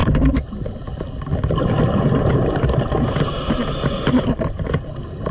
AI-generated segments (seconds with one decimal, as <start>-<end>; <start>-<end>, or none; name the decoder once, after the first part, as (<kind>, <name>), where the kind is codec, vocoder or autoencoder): 0.0-2.5 (vocoder, BigVGAN v2)